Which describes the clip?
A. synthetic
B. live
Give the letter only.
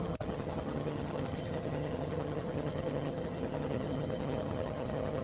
A